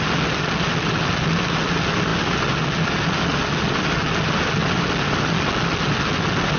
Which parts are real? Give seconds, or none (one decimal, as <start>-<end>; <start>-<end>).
0.0-6.6